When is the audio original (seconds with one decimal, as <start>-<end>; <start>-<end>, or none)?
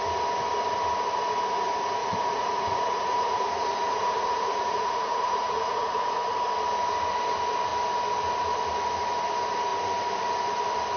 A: 0.0-2.0; 6.2-11.0